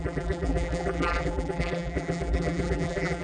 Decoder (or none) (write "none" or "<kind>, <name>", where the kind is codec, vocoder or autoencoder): vocoder, BigVGAN v2